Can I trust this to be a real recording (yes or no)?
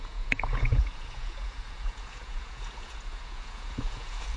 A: no